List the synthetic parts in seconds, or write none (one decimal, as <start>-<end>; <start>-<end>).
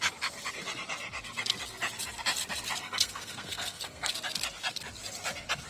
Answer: 2.8-4.1